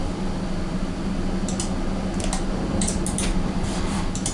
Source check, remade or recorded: recorded